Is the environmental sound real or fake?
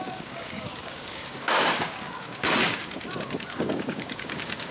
fake